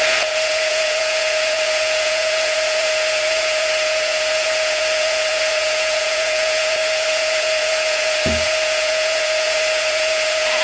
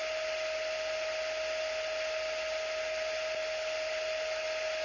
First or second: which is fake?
first